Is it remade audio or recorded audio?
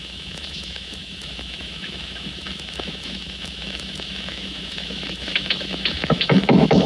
remade